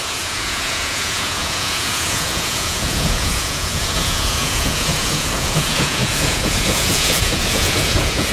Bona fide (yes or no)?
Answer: no